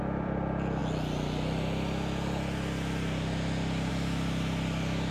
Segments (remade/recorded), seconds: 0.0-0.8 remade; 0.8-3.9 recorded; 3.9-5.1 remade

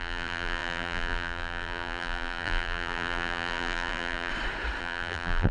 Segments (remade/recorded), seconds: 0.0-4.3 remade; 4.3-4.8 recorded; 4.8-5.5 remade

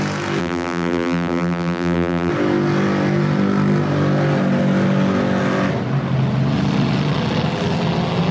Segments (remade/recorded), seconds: 0.0-0.4 recorded; 0.4-2.3 remade; 2.3-8.3 recorded

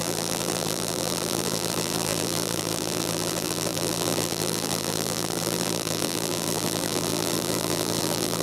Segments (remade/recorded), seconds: 0.0-8.4 remade

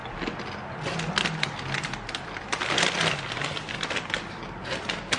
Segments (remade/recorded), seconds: 0.0-5.2 recorded

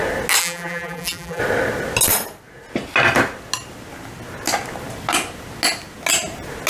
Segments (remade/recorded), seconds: 0.0-0.4 recorded; 0.4-1.4 remade; 1.4-6.7 recorded